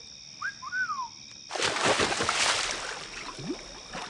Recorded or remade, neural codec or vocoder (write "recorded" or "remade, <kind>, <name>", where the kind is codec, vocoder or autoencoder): recorded